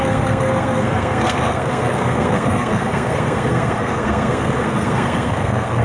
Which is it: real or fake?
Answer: fake